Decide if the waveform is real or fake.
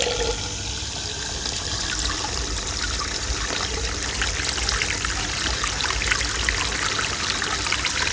real